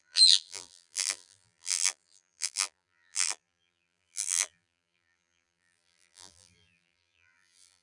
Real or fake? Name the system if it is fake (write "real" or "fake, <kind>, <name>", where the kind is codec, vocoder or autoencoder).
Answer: fake, vocoder, BigVGAN v2